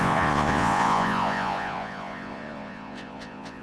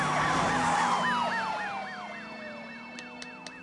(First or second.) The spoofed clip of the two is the first